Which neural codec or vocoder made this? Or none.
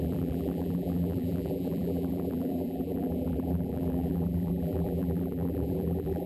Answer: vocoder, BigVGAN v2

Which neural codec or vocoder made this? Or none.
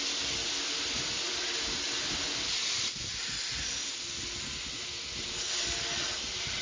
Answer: none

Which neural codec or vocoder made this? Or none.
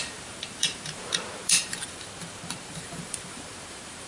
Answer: vocoder, BigVGAN v2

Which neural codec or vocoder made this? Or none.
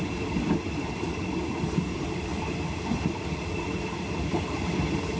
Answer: vocoder, BigVGAN v2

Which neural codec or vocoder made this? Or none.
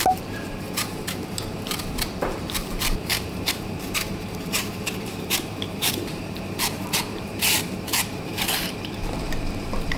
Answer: vocoder, BigVGAN v2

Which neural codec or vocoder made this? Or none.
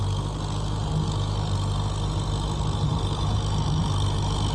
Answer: none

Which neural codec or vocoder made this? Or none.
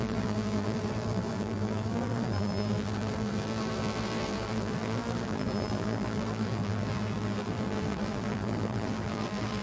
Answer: vocoder, BigVGAN v2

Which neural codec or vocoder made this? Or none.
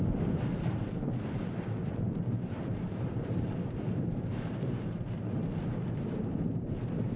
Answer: vocoder, BigVGAN v2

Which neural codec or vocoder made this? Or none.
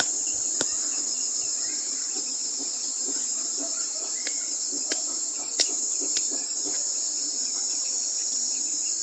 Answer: vocoder, BigVGAN v2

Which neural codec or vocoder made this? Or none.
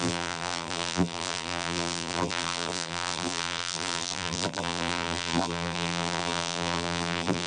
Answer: vocoder, BigVGAN v2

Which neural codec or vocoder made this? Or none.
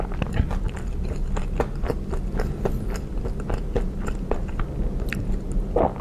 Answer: none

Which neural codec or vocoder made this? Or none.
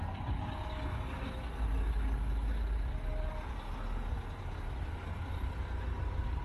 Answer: none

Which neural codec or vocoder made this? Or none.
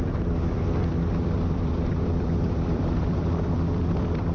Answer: vocoder, BigVGAN v2